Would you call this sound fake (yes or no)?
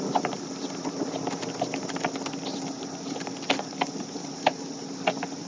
no